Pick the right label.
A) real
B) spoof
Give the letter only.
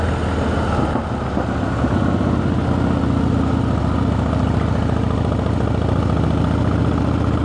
A